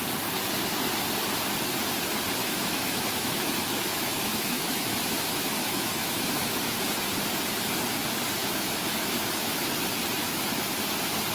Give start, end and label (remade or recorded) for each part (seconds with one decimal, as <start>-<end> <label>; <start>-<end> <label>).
0.0-2.4 recorded; 2.4-5.0 remade; 5.0-5.6 recorded; 5.6-6.6 remade; 6.6-8.4 recorded; 8.4-9.7 remade; 9.7-11.3 recorded